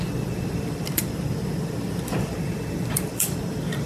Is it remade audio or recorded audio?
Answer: remade